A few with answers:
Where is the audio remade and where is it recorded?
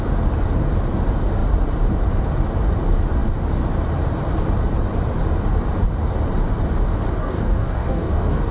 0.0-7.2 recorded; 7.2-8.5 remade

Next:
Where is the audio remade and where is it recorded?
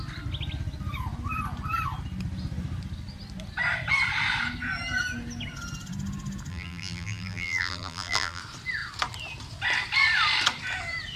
0.0-6.5 recorded; 6.5-8.4 remade; 8.4-11.2 recorded